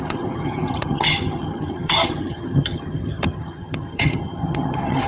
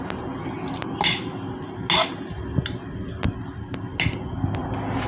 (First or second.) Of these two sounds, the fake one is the first